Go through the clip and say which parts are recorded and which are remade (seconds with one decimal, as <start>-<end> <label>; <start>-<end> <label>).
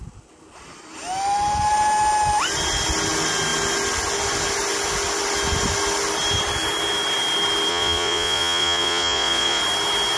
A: 0.0-7.7 recorded; 7.7-9.6 remade; 9.6-10.2 recorded